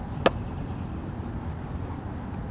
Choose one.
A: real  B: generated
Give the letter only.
A